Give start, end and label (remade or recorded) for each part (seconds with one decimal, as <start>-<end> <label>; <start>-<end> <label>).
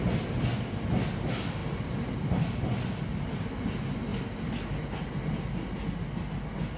0.0-6.8 recorded